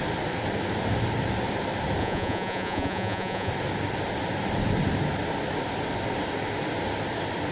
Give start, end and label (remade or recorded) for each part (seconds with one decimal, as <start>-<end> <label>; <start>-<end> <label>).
0.0-2.0 recorded; 2.0-3.5 remade; 3.5-7.5 recorded